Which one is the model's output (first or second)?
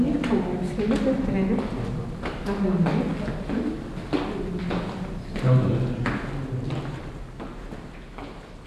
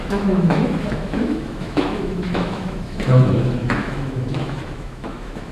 second